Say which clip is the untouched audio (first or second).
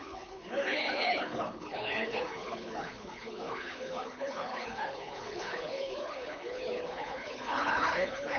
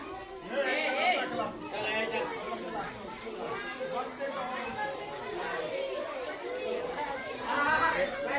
second